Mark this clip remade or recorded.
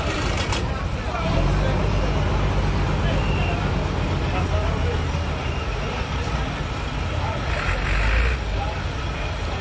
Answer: recorded